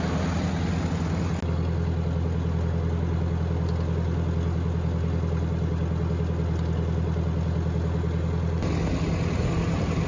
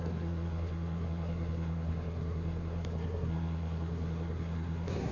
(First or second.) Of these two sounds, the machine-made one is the second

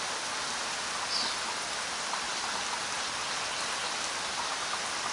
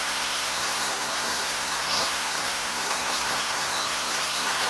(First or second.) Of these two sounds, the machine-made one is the second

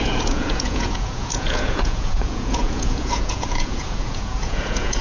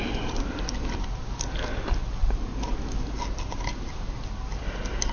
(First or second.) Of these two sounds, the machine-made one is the first